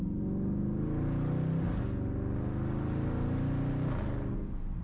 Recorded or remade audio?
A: recorded